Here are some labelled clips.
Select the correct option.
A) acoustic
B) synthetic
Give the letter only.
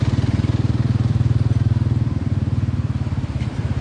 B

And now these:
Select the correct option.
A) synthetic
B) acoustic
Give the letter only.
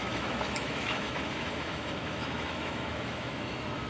A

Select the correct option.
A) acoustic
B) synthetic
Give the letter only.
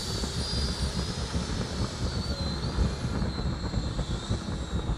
A